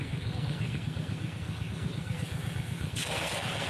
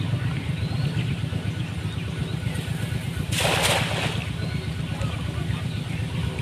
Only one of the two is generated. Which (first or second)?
first